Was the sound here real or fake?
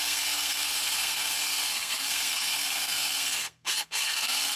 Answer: fake